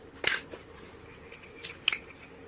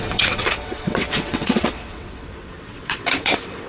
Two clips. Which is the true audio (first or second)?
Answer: first